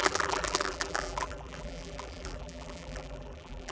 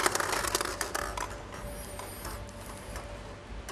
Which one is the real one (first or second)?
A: second